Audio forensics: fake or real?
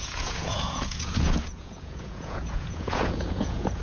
fake